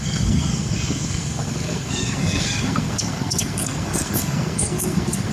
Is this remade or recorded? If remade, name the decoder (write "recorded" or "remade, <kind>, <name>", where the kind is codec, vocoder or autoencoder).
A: remade, codec, SNAC